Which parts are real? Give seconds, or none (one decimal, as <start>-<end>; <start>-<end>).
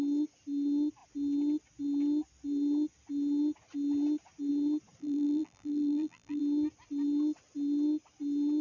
0.0-5.0; 6.4-8.6